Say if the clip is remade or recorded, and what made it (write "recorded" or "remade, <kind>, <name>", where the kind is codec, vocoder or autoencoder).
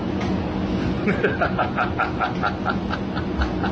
recorded